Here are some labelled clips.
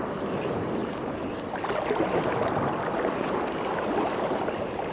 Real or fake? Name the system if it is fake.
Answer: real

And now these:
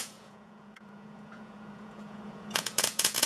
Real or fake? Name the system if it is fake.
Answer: fake, vocoder, Vocos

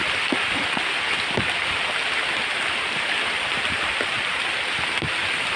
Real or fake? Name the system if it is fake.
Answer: real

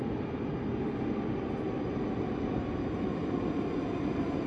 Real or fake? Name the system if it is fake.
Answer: real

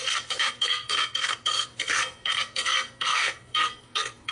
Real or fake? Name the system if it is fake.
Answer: fake, codec, SNAC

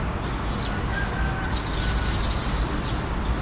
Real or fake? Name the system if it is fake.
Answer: real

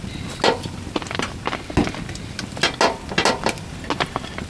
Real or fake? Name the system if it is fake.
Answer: real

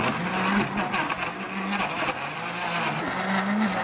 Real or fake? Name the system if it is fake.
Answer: real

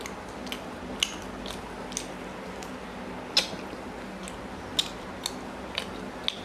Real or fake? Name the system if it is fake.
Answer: real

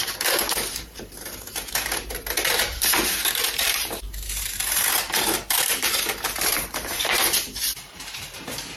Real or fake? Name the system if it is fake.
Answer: fake, vocoder, BigVGAN v2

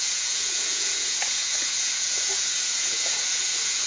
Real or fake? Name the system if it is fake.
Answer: fake, vocoder, Vocos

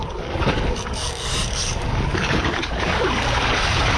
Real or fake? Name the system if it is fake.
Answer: fake, codec, DAC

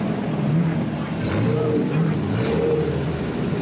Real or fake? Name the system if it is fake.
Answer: real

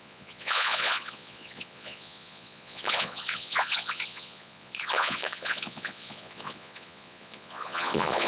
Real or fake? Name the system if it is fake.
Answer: fake, vocoder, Vocos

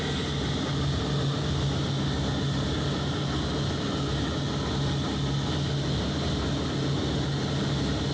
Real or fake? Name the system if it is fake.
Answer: real